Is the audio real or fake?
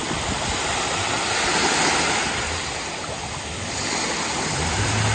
real